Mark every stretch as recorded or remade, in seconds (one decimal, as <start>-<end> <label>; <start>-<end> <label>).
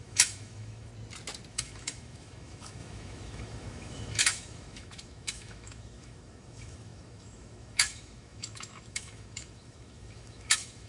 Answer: 0.0-0.9 remade; 0.9-1.5 recorded; 1.5-10.9 remade